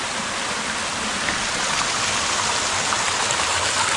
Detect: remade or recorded recorded